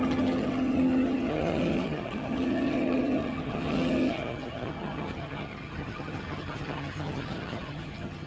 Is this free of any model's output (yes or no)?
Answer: no